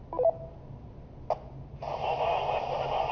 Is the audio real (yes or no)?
yes